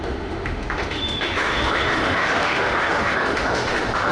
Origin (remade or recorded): remade